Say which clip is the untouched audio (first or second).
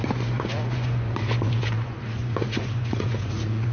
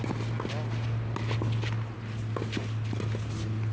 second